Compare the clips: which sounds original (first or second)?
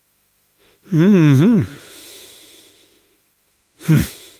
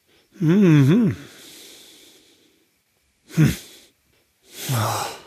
second